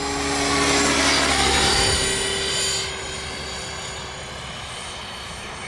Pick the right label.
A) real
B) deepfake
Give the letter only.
A